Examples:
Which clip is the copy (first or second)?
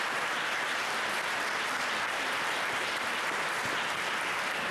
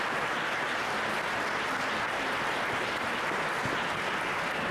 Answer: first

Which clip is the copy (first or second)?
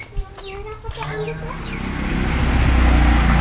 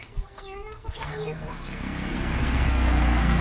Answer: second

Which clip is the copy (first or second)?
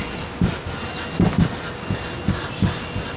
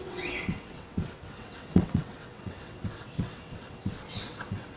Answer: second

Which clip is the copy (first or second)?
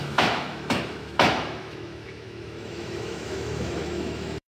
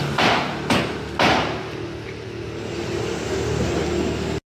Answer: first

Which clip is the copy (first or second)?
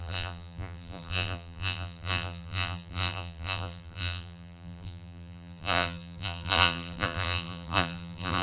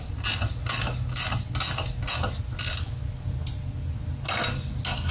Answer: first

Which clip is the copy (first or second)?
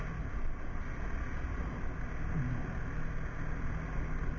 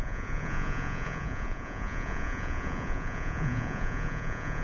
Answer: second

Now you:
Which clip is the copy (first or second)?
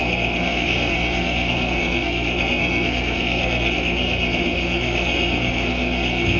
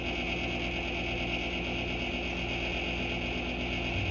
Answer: first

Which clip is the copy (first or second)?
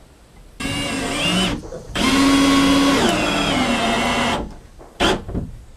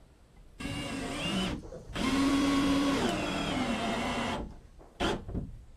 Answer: second